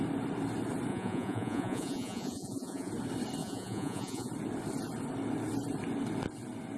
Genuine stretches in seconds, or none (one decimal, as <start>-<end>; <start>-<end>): 0.0-0.9; 2.9-3.4; 4.3-6.8